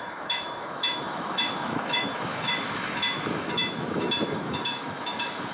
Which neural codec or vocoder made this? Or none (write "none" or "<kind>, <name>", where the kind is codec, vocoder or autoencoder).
autoencoder, DAC-VAE